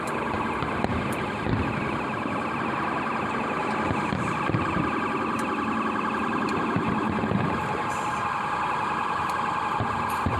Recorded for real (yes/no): yes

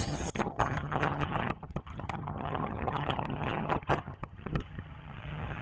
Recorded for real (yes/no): no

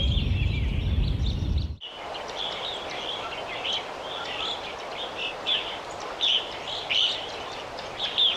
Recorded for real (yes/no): yes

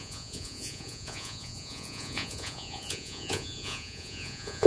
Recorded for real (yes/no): no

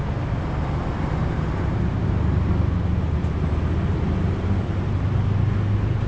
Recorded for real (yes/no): yes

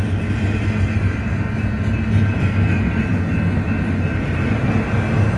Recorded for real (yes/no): yes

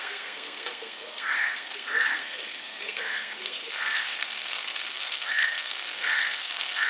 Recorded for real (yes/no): no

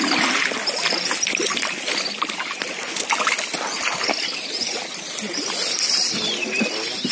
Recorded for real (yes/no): yes